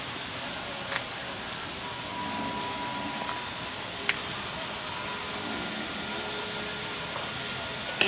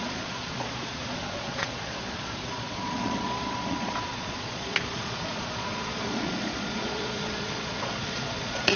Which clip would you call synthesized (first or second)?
second